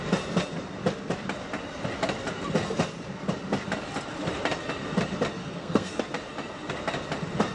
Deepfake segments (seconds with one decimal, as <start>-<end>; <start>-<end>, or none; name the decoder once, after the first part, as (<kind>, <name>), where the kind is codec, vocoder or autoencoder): 5.4-6.0 (codec, SNAC)